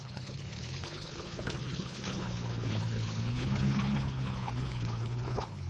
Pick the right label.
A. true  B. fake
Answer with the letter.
B